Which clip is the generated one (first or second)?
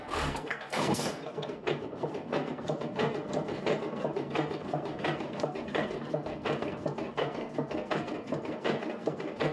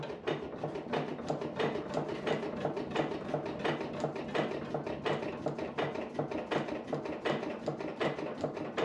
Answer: first